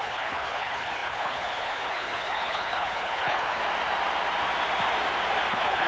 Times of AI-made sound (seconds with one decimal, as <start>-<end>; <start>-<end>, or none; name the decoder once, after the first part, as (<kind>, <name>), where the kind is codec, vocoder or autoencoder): 0.0-3.6 (codec, HILCodec); 5.5-5.9